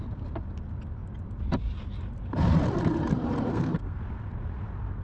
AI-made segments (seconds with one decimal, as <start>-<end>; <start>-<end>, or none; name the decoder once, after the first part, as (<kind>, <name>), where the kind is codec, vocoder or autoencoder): 3.5-4.0 (codec, SNAC)